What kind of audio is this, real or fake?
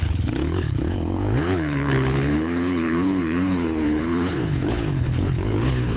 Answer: fake